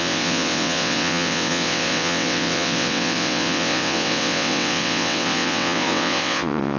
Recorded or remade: remade